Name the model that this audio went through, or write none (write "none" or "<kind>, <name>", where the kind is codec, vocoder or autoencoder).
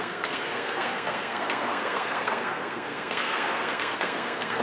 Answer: codec, SNAC